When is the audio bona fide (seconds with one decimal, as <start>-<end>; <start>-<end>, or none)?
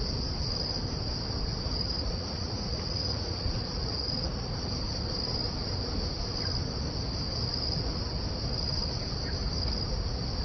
0.0-1.5; 4.7-10.4